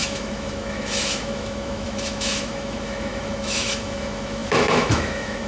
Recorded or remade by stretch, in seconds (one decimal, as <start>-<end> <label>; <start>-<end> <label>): 0.0-5.5 remade